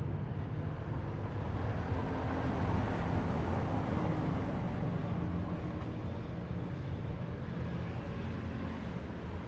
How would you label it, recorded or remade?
recorded